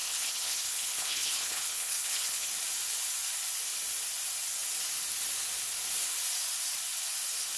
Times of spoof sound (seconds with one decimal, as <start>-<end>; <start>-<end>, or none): 0.0-2.5